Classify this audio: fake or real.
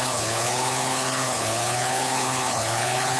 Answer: fake